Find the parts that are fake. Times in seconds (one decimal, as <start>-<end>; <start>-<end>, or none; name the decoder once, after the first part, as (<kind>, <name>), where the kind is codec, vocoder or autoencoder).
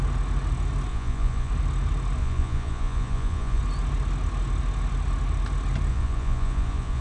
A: 0.9-1.5 (vocoder, Vocos); 2.2-3.6; 5.9-7.0